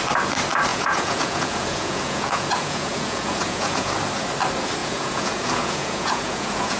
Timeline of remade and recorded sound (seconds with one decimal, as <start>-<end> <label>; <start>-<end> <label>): 0.0-0.7 recorded; 0.7-3.9 remade; 3.9-4.8 recorded; 4.8-6.8 remade